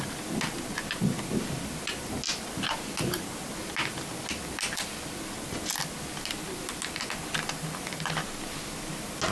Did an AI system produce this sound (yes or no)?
no